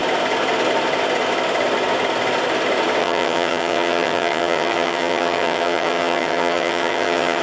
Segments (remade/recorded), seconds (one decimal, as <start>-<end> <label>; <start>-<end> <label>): 0.0-3.0 recorded; 3.0-7.4 remade